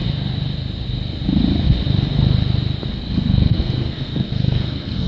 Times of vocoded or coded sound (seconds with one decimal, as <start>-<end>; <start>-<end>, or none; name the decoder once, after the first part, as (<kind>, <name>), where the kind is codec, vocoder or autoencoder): 3.0-5.1 (codec, SNAC)